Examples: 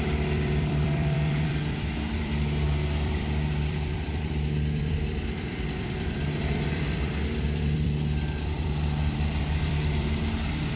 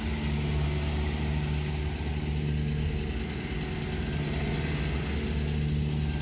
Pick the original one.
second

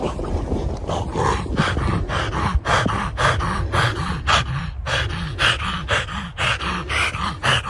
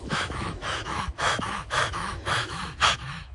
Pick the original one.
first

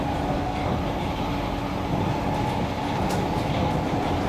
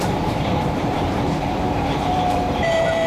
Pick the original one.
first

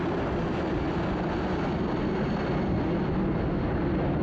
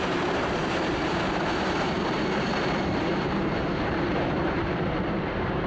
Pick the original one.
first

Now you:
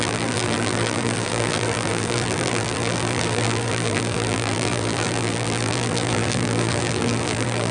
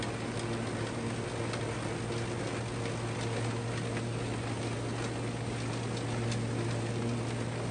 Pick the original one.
second